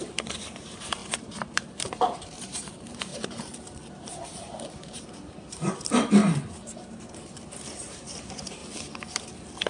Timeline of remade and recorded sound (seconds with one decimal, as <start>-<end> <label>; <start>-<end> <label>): 0.0-8.6 remade; 8.6-9.7 recorded